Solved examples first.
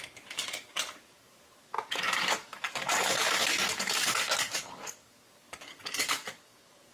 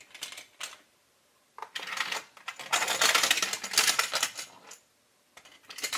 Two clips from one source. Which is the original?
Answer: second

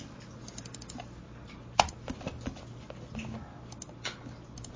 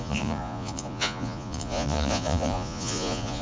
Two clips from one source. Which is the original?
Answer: first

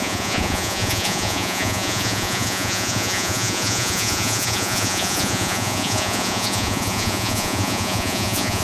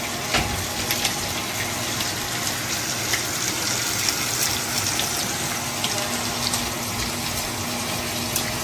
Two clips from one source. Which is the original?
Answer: second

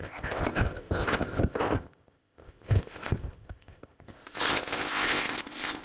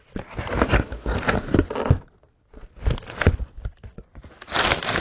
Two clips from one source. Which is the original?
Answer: second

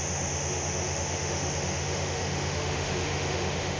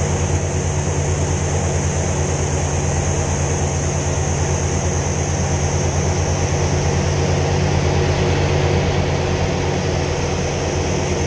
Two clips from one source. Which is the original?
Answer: second